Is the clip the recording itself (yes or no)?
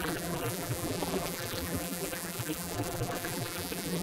no